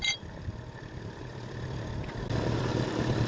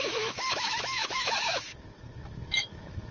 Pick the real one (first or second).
first